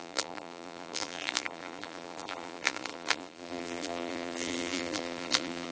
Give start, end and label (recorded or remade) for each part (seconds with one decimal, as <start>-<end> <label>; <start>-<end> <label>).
0.0-5.7 remade

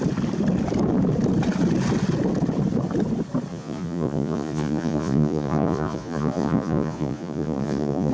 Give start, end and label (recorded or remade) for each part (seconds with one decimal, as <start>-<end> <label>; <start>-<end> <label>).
0.0-3.5 recorded; 3.5-8.1 remade

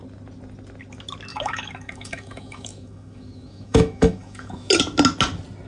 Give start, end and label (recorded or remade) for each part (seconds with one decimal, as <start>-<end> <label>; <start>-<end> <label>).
0.0-1.3 recorded; 1.3-4.7 remade; 4.7-5.7 recorded

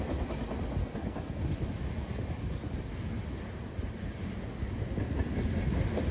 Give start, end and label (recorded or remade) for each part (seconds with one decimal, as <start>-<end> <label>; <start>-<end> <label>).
0.0-0.8 recorded; 0.8-1.4 remade; 1.4-6.1 recorded